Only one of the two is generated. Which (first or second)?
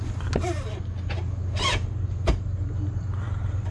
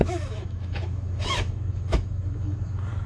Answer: second